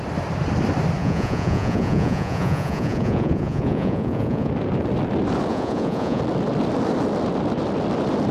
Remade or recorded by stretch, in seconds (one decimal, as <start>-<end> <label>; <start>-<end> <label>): 0.0-1.0 recorded; 1.0-4.5 remade; 4.5-5.5 recorded; 5.5-6.2 remade; 6.2-8.3 recorded